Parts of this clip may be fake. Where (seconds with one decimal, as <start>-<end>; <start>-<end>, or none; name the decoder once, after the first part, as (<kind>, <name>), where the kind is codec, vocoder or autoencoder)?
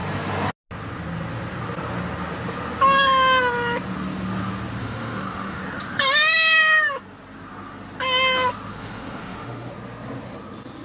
4.8-5.6 (autoencoder, DAC-VAE); 8.7-9.7